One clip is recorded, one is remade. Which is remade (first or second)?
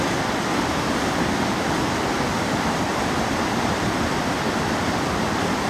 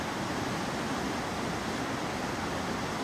first